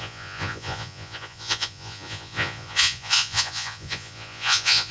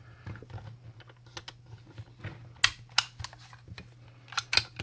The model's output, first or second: first